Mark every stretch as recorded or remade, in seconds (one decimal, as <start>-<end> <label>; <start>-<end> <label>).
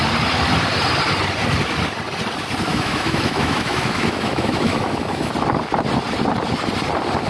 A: 0.0-2.7 recorded; 2.7-5.3 remade; 5.3-7.3 recorded